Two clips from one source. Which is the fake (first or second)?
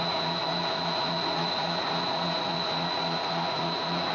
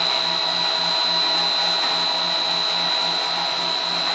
first